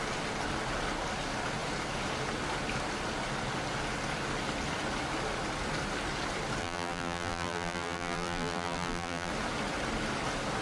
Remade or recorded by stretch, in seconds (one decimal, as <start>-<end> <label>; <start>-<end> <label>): 0.0-6.6 recorded; 6.6-9.3 remade; 9.3-10.6 recorded